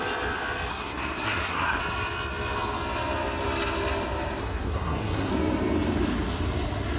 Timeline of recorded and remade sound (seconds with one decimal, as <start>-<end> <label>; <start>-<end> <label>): 0.0-0.7 recorded; 0.7-1.8 remade; 1.8-4.4 recorded; 4.4-5.3 remade; 5.3-7.0 recorded